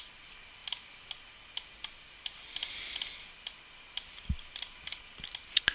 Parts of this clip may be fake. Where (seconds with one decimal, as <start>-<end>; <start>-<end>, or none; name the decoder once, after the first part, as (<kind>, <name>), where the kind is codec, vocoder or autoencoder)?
none

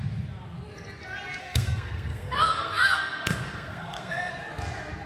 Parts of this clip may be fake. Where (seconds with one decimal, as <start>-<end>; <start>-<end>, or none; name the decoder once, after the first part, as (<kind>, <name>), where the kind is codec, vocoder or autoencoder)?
1.4-4.3 (codec, SNAC)

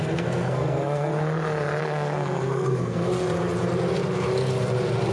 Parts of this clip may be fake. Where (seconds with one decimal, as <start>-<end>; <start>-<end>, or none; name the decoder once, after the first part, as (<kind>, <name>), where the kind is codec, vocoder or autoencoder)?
0.0-1.1 (codec, SNAC); 1.8-3.1

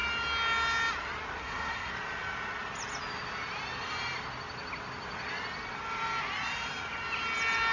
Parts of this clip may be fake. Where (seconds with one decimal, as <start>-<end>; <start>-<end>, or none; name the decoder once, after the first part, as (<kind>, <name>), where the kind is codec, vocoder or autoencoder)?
1.4-1.9 (codec, SNAC)

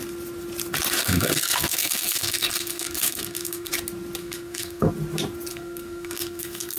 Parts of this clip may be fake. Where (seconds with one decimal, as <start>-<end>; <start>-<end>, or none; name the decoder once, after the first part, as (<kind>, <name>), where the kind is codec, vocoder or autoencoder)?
1.0-3.7 (codec, SNAC); 4.2-4.9; 5.5-6.8